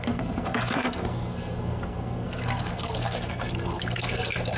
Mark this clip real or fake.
fake